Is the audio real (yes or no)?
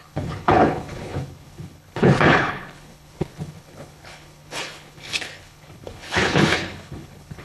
no